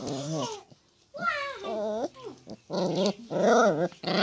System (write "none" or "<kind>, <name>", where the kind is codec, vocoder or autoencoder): none